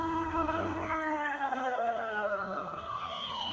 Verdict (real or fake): fake